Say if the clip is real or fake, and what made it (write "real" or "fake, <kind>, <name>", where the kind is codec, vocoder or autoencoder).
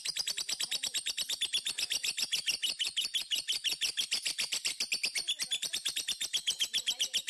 real